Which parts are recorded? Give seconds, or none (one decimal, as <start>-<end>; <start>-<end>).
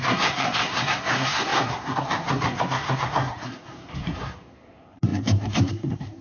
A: none